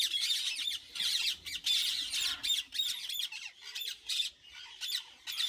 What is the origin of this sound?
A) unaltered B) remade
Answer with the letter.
A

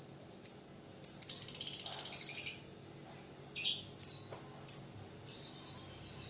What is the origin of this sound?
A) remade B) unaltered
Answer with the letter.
B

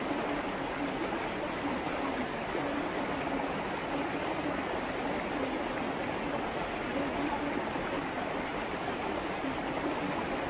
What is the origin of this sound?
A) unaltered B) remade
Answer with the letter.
A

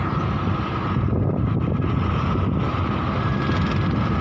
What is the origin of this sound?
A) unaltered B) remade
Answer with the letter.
A